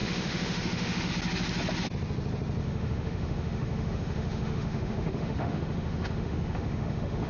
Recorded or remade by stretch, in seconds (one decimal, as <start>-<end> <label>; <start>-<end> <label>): 0.0-1.1 remade; 1.1-2.6 recorded; 2.6-7.3 remade

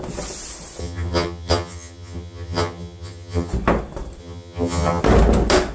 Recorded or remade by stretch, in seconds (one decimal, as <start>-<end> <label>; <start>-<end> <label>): 0.0-0.8 recorded; 0.8-3.5 remade; 3.5-4.2 recorded; 4.2-5.0 remade; 5.0-5.7 recorded

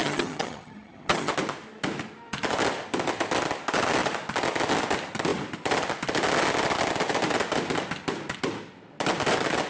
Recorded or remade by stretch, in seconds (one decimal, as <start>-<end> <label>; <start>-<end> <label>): 0.0-1.3 remade; 1.3-9.7 recorded

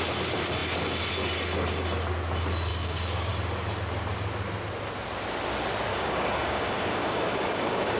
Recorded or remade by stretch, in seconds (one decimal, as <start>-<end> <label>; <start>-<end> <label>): 0.0-2.7 recorded; 2.7-3.3 remade; 3.3-5.9 recorded; 5.9-8.0 remade

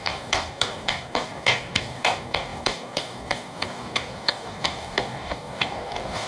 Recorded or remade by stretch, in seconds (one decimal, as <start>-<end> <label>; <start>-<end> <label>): 0.0-6.3 remade

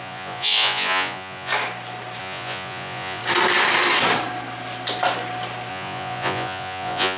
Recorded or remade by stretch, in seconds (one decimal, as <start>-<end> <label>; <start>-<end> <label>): 0.0-1.5 remade; 1.5-2.2 recorded; 2.2-3.2 remade; 3.2-5.7 recorded; 5.7-7.2 remade

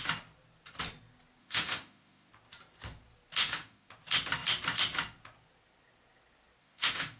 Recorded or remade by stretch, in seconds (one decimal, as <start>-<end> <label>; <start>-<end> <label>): 0.0-1.4 recorded; 1.4-2.3 remade; 2.3-3.4 recorded; 3.4-3.9 remade; 3.9-6.6 recorded; 6.6-7.2 remade

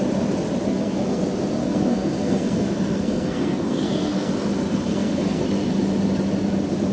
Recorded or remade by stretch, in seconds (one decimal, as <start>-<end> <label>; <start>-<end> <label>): 0.0-0.7 recorded; 0.7-1.2 remade; 1.2-1.6 recorded; 1.6-4.3 remade; 4.3-4.9 recorded; 4.9-5.4 remade; 5.4-6.9 recorded